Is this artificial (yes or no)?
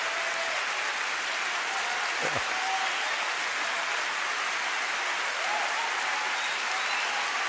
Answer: no